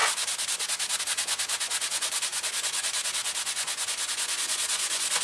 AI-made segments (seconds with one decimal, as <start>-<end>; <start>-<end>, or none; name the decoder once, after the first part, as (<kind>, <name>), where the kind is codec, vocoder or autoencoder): 1.0-5.2 (vocoder, Vocos)